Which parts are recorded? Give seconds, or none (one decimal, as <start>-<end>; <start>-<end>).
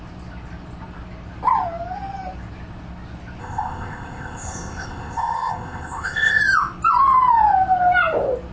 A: 0.0-3.4; 6.4-8.5